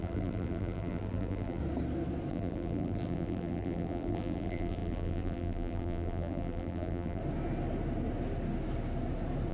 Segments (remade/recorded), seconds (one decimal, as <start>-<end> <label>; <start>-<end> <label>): 0.0-1.6 remade; 1.6-2.3 recorded; 2.3-7.2 remade; 7.2-9.5 recorded